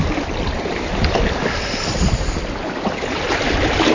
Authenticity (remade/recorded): recorded